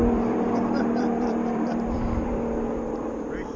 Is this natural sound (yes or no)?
no